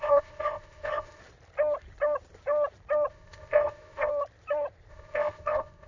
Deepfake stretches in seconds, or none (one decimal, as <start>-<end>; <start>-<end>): 0.0-1.2; 3.1-4.1; 4.9-5.9